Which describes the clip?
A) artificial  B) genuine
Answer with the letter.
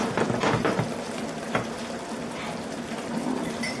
B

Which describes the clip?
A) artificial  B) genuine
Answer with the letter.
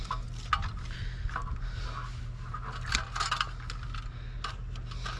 B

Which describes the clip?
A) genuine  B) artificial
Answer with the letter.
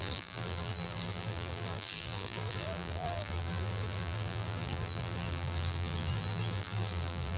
B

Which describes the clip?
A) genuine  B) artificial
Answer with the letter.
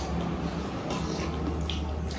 A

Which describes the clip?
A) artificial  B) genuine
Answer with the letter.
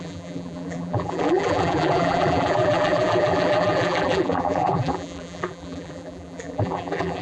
A